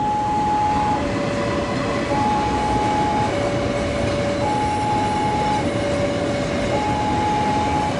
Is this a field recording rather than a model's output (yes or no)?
yes